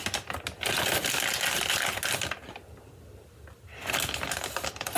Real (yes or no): yes